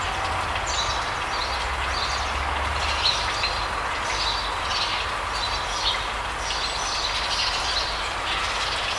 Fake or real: real